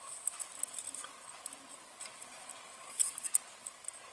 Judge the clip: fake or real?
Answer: real